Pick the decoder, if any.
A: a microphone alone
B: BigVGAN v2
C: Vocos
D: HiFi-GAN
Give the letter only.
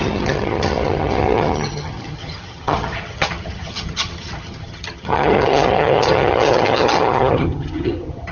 D